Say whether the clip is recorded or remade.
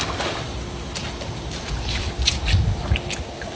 recorded